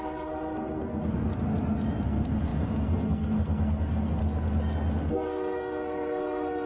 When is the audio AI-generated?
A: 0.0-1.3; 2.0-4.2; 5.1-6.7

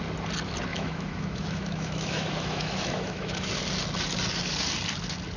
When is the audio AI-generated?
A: 0.7-3.5

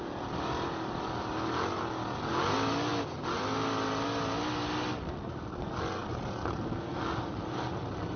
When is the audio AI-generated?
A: none

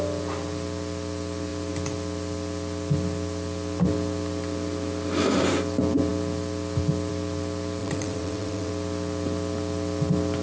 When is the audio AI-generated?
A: 7.8-8.7

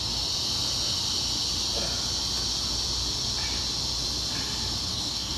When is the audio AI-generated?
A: 4.9-5.4

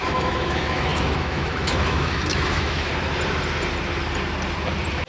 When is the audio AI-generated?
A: 0.0-2.9

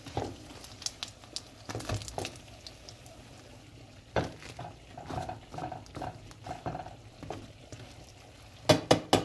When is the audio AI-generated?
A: none

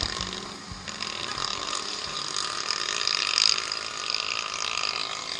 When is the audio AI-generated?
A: 1.5-2.2